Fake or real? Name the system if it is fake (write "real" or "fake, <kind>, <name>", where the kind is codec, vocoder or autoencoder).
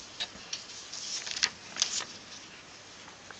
real